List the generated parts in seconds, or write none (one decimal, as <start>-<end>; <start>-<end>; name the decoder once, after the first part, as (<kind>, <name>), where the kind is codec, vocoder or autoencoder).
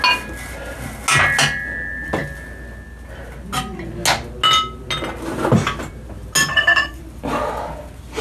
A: 6.5-7.0 (codec, SNAC)